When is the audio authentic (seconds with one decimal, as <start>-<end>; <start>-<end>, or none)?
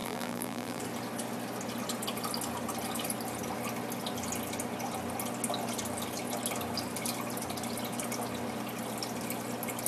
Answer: 0.8-9.9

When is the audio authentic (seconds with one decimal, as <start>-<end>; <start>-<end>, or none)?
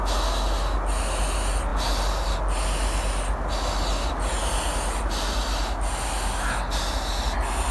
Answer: 0.0-7.7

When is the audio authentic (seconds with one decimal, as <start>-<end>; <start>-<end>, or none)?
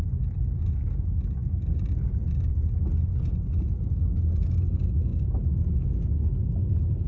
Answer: 0.0-7.1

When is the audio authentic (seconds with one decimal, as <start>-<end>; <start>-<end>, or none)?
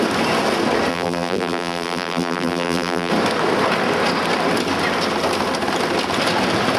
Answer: 0.0-0.9; 3.1-6.8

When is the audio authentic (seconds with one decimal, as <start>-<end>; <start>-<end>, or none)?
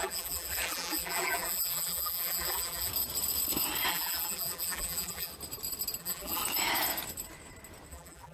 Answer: 2.9-3.9; 5.3-6.0; 6.4-7.9